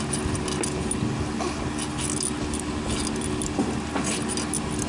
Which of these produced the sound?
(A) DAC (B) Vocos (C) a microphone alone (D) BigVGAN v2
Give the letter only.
C